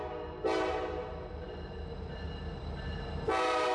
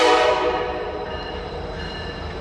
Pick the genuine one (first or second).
first